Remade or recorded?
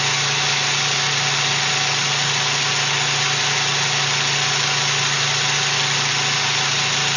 recorded